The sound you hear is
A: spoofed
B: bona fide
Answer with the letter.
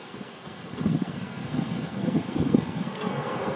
A